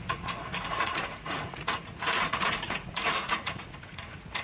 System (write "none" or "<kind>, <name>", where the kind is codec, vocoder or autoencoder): vocoder, Vocos